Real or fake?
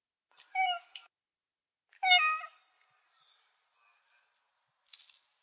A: real